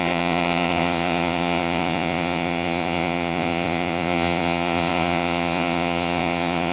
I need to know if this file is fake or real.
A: fake